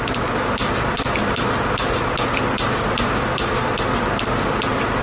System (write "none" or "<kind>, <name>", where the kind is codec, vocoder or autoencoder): none